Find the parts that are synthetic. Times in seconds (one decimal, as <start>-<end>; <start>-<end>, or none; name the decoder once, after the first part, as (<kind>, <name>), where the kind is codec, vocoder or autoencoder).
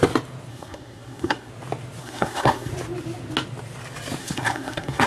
0.5-1.5 (codec, SNAC); 2.0-2.7; 4.2-5.1